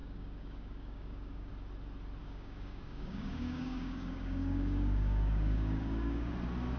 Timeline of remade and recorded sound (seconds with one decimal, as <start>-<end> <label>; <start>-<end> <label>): 0.0-1.5 remade; 1.5-2.2 recorded; 2.2-6.3 remade; 6.3-6.8 recorded